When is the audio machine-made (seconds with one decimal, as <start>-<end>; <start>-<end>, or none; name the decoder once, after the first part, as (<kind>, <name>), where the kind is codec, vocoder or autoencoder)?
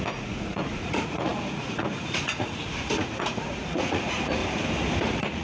0.0-4.4 (vocoder, Vocos); 5.0-5.4